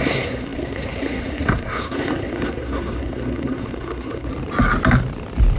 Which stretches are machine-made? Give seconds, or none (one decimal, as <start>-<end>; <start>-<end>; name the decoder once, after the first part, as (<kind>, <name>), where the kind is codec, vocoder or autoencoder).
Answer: 0.0-4.3 (codec, SNAC)